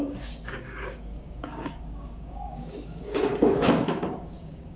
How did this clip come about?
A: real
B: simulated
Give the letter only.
B